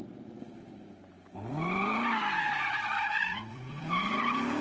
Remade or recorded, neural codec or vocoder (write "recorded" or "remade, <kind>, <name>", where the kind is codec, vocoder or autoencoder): remade, vocoder, BigVGAN v2